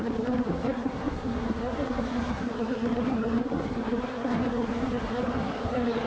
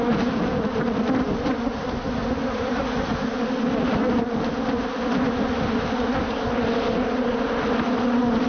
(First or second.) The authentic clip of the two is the second